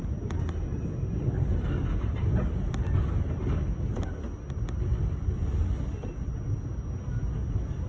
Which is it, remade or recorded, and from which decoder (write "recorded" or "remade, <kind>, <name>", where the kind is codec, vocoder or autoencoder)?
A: recorded